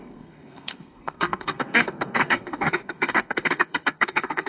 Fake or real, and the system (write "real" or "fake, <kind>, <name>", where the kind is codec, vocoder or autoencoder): fake, codec, SNAC